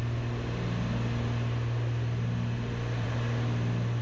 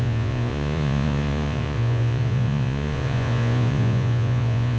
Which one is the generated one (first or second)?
second